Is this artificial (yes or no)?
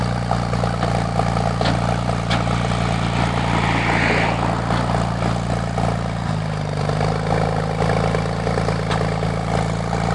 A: no